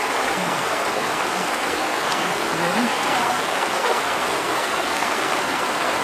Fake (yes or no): yes